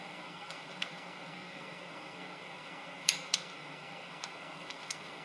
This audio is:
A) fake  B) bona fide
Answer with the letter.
A